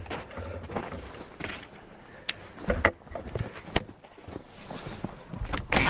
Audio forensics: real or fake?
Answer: real